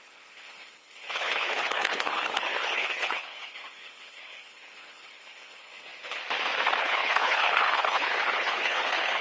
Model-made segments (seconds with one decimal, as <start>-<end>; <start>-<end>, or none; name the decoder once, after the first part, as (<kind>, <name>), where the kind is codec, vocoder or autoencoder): 0.0-6.2 (codec, HILCodec); 6.8-9.2